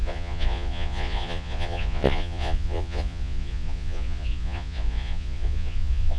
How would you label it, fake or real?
fake